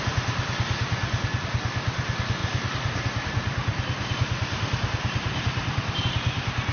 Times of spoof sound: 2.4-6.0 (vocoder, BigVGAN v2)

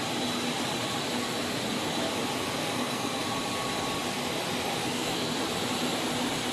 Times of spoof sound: 2.6-3.2 (codec, SNAC); 4.8-5.4